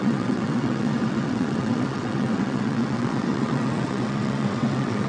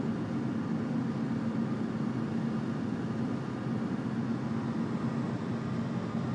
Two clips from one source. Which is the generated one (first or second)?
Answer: first